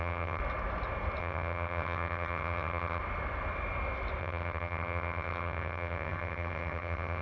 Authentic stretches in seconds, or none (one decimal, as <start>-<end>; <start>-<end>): 0.4-1.2; 3.0-4.2